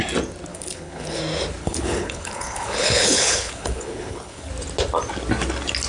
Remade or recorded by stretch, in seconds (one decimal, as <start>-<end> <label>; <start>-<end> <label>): 0.0-0.5 recorded; 0.5-1.2 remade; 1.2-1.6 recorded; 1.6-4.5 remade; 4.5-5.9 recorded